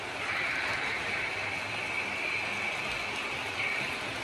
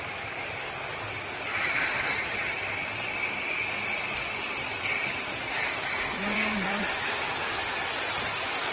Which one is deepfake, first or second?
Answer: second